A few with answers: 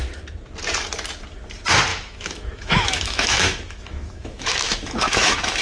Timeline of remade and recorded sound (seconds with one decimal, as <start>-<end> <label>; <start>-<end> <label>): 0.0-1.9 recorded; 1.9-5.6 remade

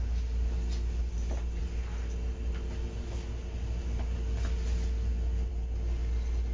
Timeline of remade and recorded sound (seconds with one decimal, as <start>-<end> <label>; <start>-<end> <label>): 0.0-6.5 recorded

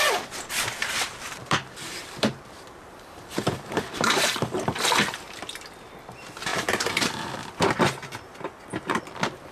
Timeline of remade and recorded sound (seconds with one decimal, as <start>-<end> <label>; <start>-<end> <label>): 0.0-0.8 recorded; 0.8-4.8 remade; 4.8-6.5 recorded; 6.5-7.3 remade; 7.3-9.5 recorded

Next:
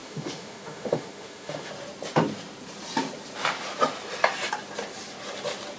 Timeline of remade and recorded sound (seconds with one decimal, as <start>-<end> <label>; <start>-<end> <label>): 0.0-1.7 remade; 1.7-5.8 recorded